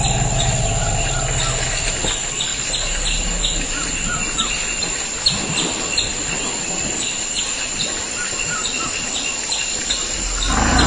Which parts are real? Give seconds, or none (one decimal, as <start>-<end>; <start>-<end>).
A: 0.0-10.9